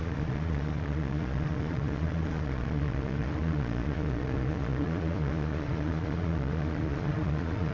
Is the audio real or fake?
fake